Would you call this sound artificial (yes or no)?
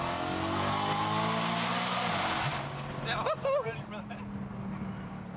no